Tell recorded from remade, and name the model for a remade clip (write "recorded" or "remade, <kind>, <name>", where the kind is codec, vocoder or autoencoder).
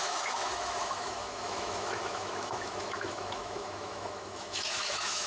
remade, autoencoder, DAC-VAE